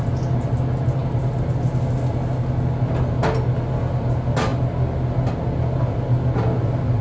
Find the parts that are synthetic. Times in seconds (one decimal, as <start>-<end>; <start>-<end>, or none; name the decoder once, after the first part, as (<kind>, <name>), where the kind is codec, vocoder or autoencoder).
none